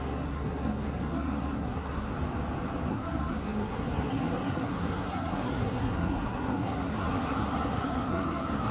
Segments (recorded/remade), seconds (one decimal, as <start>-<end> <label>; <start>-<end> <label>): 0.0-2.1 remade; 2.1-2.9 recorded; 2.9-8.7 remade